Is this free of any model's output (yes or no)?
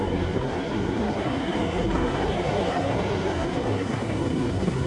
no